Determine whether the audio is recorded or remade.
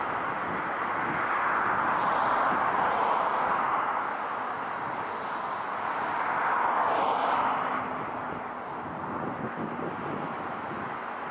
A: recorded